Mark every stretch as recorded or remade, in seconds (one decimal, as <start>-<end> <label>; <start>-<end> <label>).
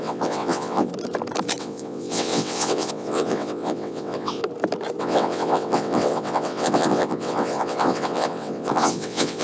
0.0-0.9 remade; 0.9-1.6 recorded; 1.6-4.4 remade; 4.4-5.0 recorded; 5.0-9.4 remade